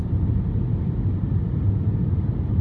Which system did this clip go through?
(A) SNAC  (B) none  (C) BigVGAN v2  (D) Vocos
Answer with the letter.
B